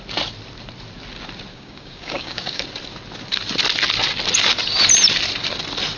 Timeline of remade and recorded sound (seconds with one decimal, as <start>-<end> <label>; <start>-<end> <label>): 0.0-1.5 recorded; 1.5-2.6 remade; 2.6-6.0 recorded